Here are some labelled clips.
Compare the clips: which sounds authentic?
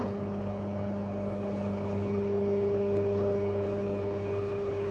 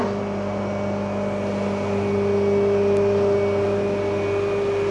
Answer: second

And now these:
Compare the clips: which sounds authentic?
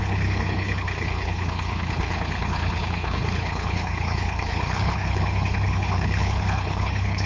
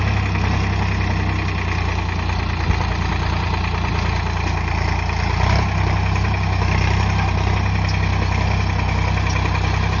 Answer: second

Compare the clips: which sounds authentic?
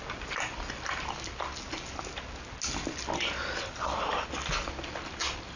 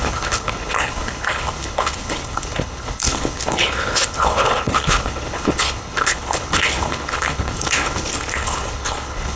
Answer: first